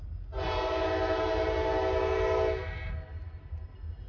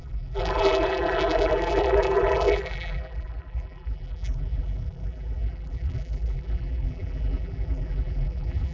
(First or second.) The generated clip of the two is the second